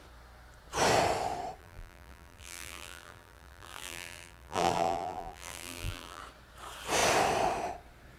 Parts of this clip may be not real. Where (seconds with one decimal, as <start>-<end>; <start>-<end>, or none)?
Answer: 1.6-6.2